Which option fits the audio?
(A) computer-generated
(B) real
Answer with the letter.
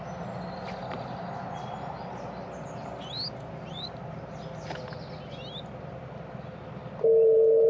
B